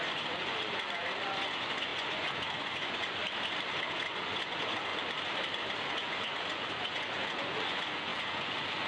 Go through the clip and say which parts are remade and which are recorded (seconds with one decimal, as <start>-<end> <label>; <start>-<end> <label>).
0.0-3.2 remade; 3.2-3.9 recorded; 3.9-4.9 remade; 4.9-5.9 recorded; 5.9-8.9 remade